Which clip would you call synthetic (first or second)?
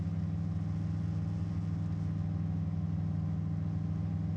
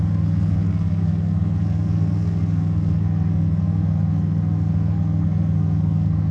second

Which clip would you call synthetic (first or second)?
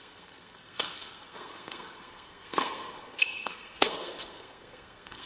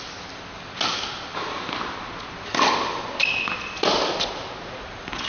first